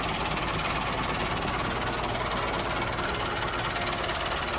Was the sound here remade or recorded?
recorded